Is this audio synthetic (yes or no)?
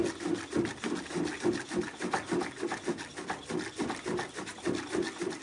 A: no